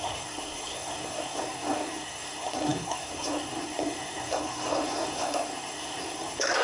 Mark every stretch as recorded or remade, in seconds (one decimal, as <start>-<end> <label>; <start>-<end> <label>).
0.0-6.6 remade